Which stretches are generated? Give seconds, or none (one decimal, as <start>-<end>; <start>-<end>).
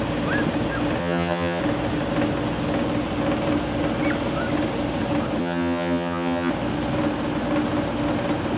1.0-1.6; 5.4-6.5